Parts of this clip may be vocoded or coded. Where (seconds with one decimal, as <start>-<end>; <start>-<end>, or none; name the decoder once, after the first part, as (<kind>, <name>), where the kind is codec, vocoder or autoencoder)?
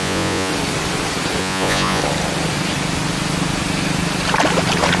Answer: 0.0-0.5 (vocoder, Vocos); 1.4-2.0